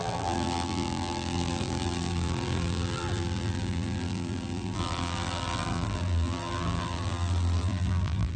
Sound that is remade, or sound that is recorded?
remade